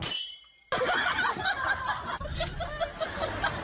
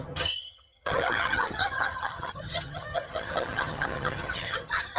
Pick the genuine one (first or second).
first